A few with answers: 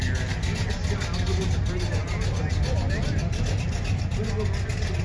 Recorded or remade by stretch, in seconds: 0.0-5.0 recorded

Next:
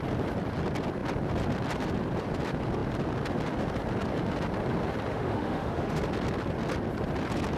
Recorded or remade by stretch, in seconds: 0.0-5.1 recorded; 5.1-6.0 remade; 6.0-7.6 recorded